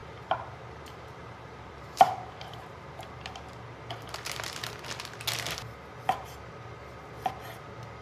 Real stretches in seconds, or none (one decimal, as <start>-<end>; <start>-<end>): 3.3-8.0